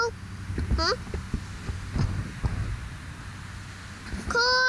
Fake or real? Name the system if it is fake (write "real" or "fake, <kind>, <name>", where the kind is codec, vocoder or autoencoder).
real